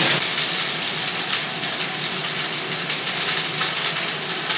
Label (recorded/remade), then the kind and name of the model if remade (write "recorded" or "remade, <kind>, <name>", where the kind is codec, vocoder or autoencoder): recorded